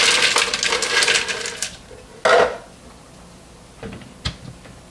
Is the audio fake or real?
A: real